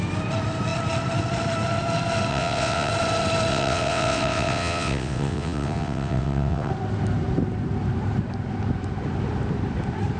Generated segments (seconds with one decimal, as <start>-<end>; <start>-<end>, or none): 2.3-2.9; 3.5-6.7